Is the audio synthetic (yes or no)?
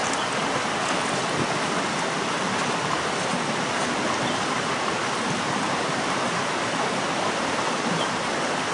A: no